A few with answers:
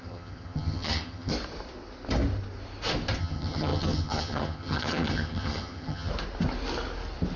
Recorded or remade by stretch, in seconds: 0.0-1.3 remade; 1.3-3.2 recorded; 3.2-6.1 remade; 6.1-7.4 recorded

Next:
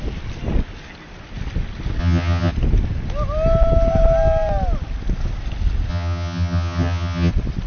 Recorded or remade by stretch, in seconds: 0.0-2.0 recorded; 2.0-2.5 remade; 2.5-5.9 recorded; 5.9-7.3 remade; 7.3-7.7 recorded